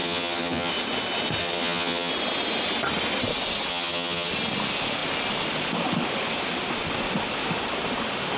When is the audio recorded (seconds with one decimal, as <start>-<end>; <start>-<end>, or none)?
0.7-1.4; 2.1-3.7; 4.3-8.4